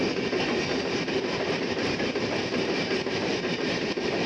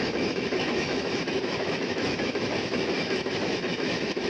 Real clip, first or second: first